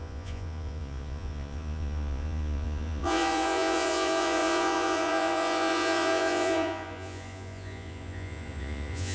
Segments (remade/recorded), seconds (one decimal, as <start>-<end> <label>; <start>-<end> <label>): 0.0-9.1 remade